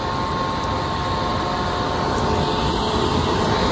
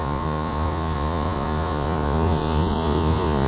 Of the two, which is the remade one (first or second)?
second